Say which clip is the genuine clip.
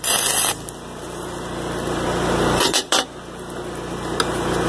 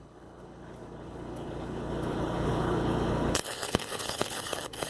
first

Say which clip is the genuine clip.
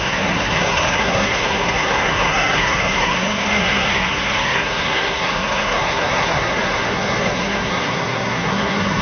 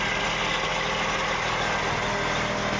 second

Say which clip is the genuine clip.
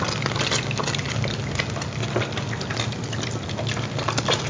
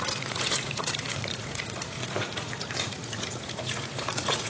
first